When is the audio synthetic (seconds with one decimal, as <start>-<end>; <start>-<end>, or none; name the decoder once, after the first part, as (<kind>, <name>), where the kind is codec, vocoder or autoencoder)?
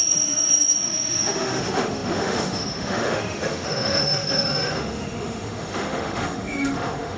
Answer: 0.0-7.2 (autoencoder, DAC-VAE)